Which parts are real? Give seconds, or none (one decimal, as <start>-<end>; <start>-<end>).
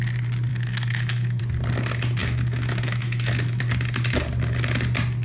0.0-0.5; 1.4-2.2; 3.6-5.2